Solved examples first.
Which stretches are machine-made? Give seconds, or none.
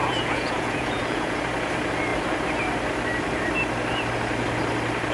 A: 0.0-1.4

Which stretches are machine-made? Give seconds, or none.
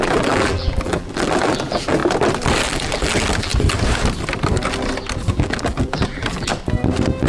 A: 0.0-2.0; 2.6-3.5; 5.3-6.5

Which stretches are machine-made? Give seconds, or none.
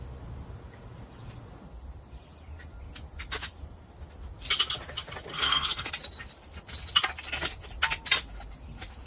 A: 5.3-5.9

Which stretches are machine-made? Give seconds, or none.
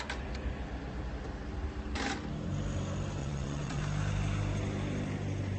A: 3.2-3.8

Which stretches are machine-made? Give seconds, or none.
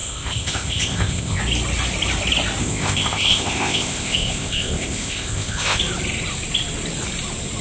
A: 0.0-1.4; 2.6-5.8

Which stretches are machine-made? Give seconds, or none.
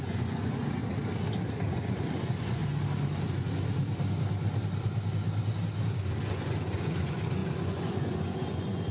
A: 0.0-0.8; 1.7-2.6; 6.3-8.9